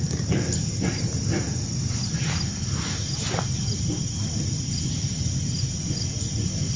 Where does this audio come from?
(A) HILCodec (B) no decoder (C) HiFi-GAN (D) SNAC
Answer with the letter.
B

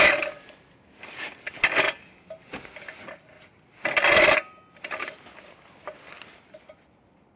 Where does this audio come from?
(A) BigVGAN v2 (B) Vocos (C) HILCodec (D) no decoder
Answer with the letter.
D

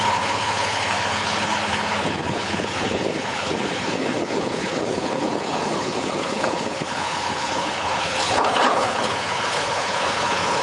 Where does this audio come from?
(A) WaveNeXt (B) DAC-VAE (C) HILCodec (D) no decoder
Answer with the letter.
C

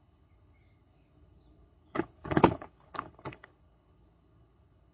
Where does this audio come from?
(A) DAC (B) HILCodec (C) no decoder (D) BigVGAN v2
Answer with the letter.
B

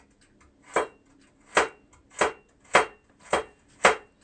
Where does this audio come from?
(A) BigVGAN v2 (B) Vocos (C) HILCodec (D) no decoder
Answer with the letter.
D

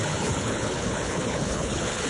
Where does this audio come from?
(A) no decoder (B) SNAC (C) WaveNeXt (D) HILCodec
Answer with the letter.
D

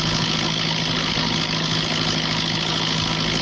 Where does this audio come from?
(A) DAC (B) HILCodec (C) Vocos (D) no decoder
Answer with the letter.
B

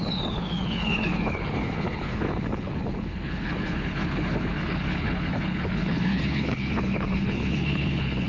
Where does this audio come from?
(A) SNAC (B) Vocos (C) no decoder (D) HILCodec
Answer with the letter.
D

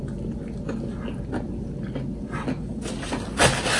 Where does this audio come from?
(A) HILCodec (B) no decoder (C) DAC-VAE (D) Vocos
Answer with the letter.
B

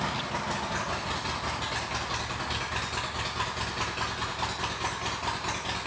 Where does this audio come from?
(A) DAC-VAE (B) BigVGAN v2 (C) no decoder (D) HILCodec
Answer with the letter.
C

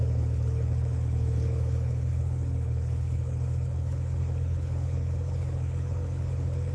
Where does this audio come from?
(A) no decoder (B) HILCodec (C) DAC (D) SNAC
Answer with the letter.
B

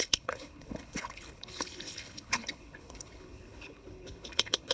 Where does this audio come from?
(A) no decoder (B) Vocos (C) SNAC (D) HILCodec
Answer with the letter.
D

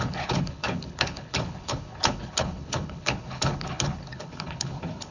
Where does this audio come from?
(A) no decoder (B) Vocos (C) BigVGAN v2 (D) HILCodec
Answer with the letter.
D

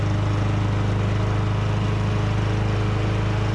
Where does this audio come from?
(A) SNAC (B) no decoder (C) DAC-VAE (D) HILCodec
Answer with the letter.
B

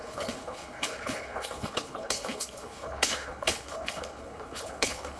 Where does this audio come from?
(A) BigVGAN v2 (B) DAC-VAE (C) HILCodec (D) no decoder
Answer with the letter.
C